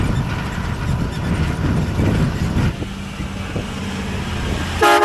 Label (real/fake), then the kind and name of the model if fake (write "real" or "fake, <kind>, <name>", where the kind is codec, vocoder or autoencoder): real